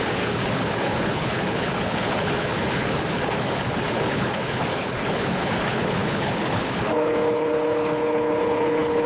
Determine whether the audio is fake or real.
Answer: fake